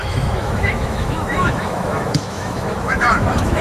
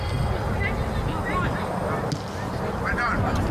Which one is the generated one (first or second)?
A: first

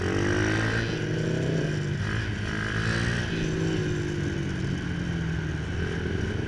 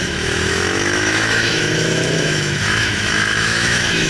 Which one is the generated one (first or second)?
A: second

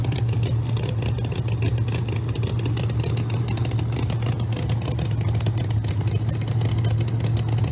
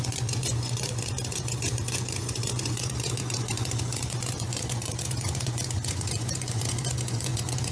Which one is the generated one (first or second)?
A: second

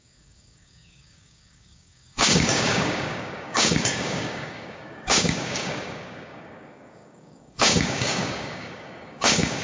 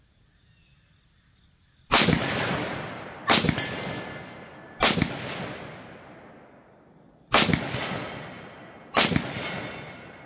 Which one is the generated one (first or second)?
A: first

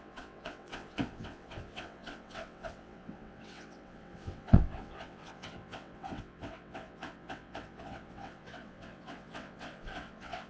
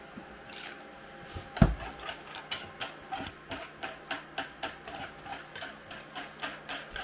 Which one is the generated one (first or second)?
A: first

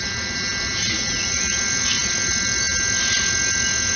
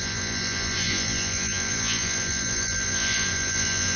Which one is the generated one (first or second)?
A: second